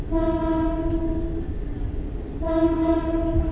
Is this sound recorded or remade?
recorded